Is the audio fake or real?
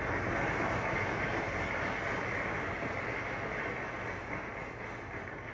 real